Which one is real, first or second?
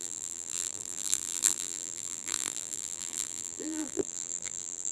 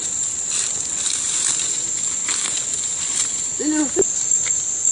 second